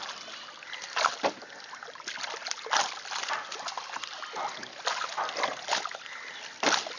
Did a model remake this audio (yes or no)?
no